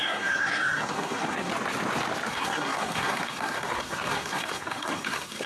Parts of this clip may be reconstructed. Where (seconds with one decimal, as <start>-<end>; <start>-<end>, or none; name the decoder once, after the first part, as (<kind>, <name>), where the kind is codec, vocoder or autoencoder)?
0.0-1.5 (codec, SNAC); 2.3-5.5